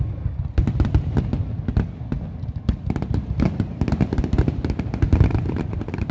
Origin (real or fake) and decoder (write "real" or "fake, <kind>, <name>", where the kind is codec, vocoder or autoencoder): real